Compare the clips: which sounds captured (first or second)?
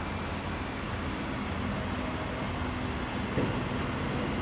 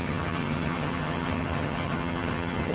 first